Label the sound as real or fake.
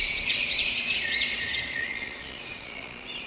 fake